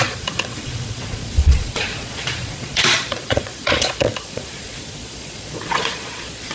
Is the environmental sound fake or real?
fake